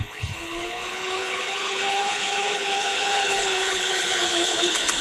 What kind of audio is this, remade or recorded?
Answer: remade